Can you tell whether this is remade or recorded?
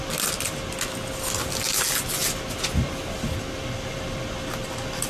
recorded